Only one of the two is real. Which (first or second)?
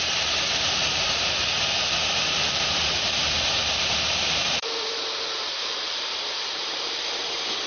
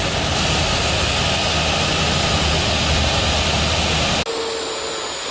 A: second